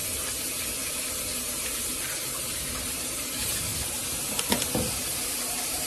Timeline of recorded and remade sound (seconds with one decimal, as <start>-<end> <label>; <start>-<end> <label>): 0.0-0.6 recorded; 0.6-5.9 remade